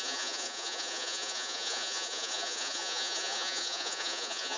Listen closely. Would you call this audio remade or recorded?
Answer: remade